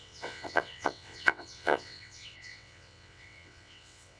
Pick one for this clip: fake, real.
fake